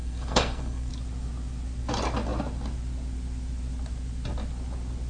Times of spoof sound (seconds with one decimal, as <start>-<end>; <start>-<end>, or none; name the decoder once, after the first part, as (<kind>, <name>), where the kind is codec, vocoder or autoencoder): 0.0-0.9 (codec, SNAC)